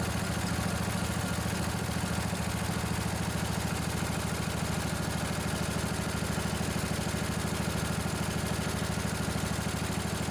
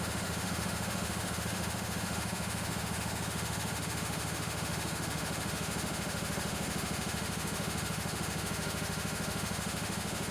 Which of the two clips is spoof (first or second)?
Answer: second